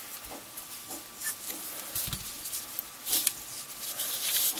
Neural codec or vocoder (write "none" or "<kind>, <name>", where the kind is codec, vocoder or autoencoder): none